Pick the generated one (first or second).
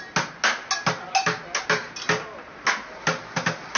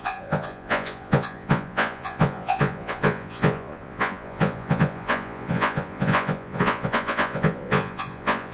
second